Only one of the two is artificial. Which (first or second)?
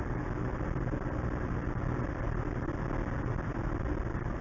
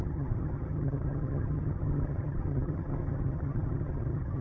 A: second